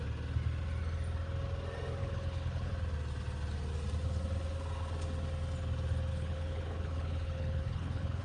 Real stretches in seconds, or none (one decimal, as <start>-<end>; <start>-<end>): 0.0-2.0; 2.7-6.1